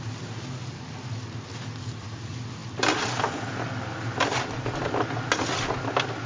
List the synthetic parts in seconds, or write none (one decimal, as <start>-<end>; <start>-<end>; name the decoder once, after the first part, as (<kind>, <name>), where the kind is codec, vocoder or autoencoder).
none